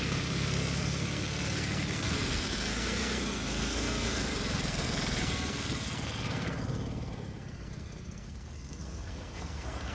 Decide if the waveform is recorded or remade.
remade